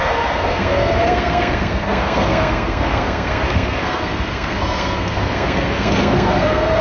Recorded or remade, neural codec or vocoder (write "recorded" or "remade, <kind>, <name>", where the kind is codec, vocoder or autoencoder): remade, codec, SNAC